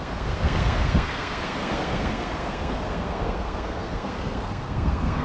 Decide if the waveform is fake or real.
fake